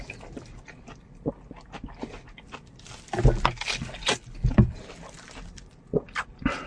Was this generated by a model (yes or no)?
no